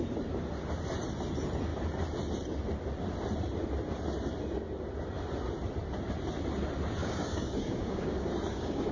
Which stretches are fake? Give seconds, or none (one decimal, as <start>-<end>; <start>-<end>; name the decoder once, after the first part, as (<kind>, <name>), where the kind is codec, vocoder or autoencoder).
7.0-8.9 (codec, DAC)